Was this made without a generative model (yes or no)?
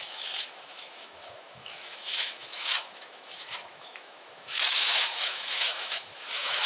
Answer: no